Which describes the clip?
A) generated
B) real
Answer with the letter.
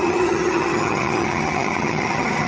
A